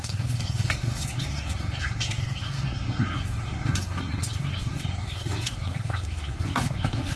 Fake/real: fake